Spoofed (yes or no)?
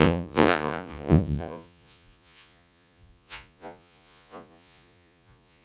yes